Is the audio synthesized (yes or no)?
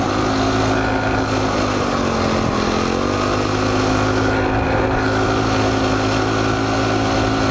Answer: no